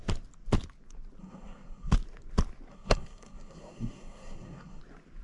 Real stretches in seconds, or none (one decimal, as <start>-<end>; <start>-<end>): 0.0-1.2; 1.9-2.7; 4.8-5.2